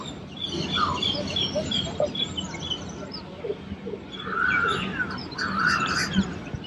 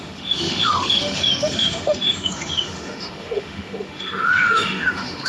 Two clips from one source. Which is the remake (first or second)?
second